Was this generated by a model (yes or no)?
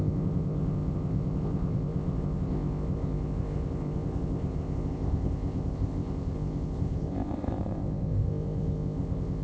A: yes